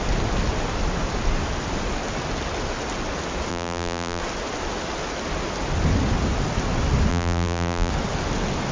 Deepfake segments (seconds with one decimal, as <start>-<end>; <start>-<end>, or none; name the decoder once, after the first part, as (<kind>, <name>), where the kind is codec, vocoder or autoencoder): 3.5-4.2 (vocoder, BigVGAN v2); 7.1-7.9